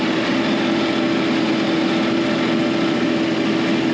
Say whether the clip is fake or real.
real